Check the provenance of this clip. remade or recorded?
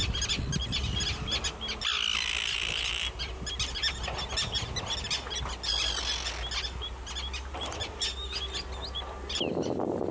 recorded